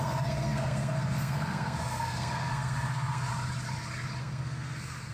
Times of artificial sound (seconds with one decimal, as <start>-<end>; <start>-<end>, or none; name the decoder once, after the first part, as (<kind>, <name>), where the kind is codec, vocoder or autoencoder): 0.0-3.3 (codec, SNAC); 4.2-5.1